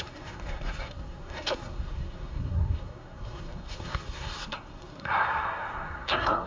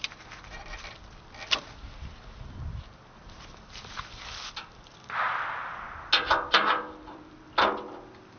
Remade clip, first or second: first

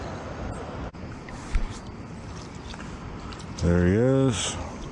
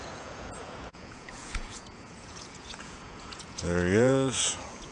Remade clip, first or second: second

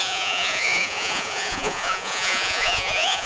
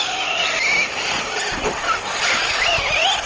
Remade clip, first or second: first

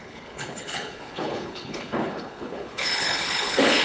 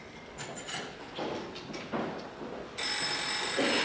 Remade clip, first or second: first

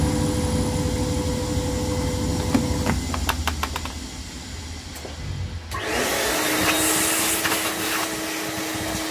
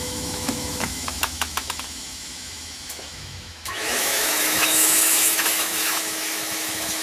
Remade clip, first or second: second